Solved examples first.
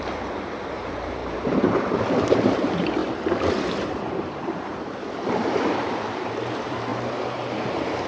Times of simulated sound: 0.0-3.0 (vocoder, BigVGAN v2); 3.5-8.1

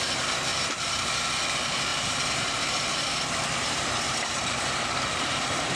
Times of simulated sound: 0.5-1.1 (vocoder, BigVGAN v2); 1.9-5.8